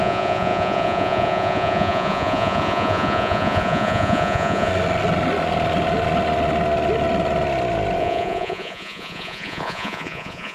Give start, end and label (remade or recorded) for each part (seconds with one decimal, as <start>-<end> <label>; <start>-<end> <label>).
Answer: 0.0-4.7 remade; 4.7-8.0 recorded; 8.0-10.5 remade